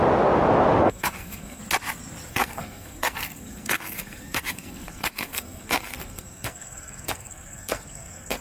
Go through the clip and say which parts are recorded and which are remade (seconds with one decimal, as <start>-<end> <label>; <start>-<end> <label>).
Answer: 0.0-0.8 recorded; 0.8-1.6 remade; 1.6-2.3 recorded; 2.3-8.4 remade